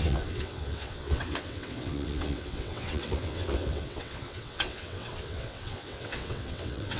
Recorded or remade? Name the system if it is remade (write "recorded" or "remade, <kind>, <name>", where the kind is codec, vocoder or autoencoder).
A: remade, vocoder, WaveNeXt